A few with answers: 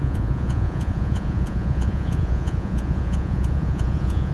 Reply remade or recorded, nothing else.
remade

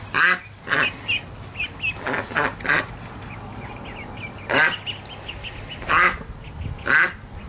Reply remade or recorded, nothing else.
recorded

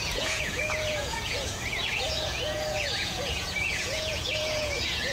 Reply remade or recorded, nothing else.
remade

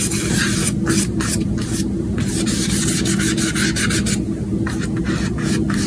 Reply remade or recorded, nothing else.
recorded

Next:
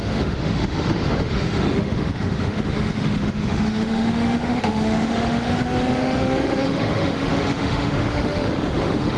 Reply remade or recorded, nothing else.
remade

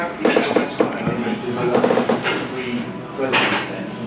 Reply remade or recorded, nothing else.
remade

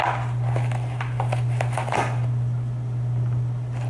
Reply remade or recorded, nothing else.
recorded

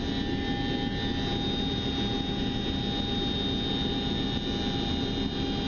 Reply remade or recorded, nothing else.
recorded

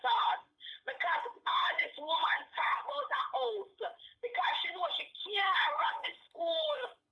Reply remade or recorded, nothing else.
remade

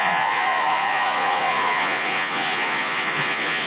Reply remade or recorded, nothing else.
remade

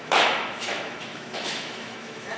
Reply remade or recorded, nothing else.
remade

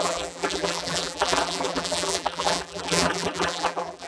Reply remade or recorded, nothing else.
remade